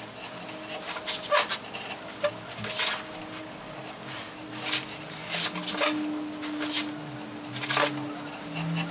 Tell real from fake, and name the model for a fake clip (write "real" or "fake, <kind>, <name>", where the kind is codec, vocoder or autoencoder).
real